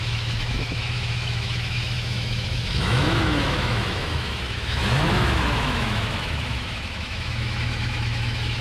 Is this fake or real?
fake